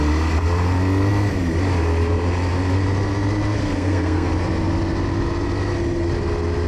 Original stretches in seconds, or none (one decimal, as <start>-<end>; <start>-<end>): 0.0-3.6; 4.3-6.7